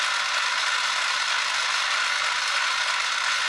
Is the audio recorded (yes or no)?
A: yes